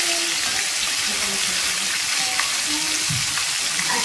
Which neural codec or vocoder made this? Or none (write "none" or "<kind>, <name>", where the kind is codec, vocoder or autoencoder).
none